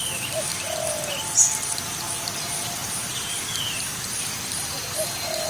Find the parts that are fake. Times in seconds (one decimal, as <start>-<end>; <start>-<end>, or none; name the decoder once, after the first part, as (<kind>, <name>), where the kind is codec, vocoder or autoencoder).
0.0-0.5 (vocoder, BigVGAN v2); 2.2-5.5

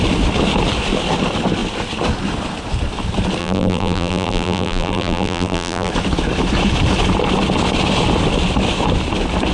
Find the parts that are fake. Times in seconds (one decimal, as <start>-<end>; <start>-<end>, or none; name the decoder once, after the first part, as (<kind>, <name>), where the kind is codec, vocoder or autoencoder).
3.4-5.9 (vocoder, BigVGAN v2)

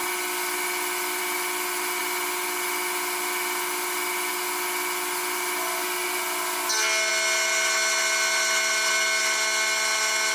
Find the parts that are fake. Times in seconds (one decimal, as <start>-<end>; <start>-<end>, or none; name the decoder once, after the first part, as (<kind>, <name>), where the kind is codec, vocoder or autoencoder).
none

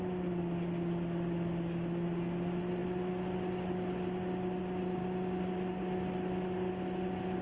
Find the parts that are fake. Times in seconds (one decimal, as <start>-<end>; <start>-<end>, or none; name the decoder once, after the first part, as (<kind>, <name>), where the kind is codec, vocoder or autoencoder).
none